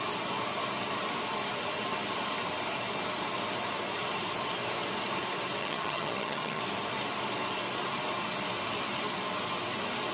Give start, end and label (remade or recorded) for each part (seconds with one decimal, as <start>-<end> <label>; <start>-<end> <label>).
0.0-5.6 recorded; 5.6-6.6 remade; 6.6-10.1 recorded